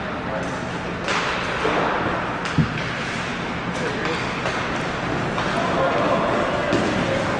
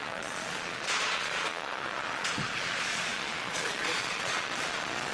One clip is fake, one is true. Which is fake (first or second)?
second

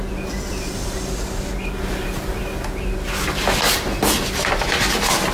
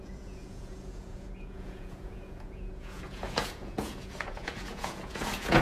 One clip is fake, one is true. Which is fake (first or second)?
second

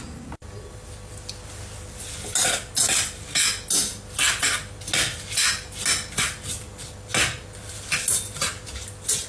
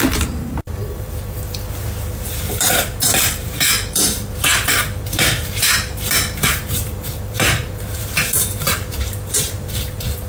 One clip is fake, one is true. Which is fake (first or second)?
second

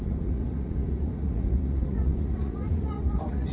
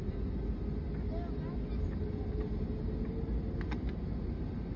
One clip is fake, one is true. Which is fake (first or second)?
first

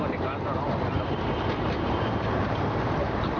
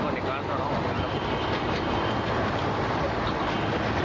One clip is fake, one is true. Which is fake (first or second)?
first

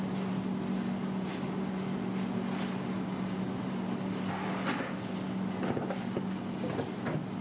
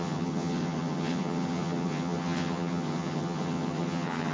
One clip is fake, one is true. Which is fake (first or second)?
second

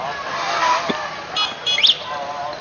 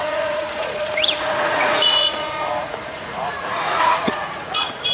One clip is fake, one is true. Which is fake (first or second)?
second